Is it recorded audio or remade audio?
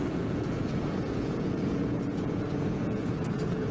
remade